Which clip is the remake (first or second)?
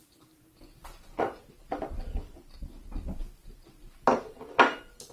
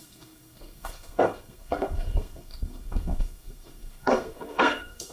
second